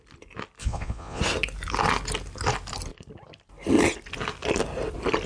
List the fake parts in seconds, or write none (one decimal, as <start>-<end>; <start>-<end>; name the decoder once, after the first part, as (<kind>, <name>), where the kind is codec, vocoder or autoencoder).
0.6-1.2 (vocoder, Vocos)